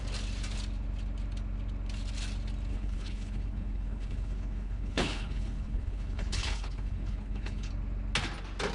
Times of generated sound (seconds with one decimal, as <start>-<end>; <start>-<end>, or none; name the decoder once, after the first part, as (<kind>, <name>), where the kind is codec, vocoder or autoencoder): 2.7-7.7 (codec, HILCodec)